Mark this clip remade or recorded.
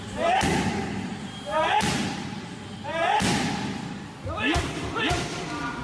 recorded